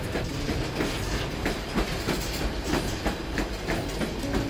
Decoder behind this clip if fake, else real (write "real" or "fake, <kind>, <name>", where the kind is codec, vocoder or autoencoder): real